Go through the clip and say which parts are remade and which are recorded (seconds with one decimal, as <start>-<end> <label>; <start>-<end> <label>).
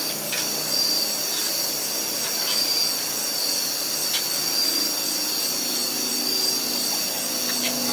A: 0.0-7.9 recorded